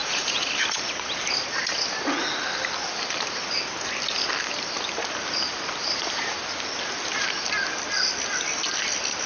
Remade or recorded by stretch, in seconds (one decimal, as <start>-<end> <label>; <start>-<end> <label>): 0.0-0.5 remade; 0.5-9.3 recorded